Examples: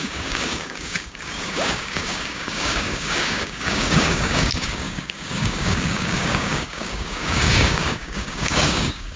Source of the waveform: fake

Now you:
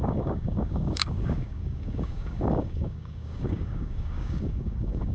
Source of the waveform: fake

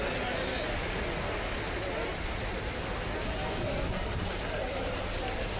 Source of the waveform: real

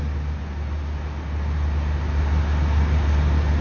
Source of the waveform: real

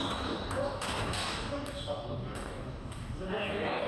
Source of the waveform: fake